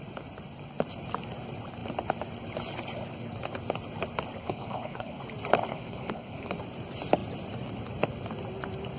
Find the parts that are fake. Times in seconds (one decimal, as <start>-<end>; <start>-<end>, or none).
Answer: 4.4-5.2; 5.7-6.5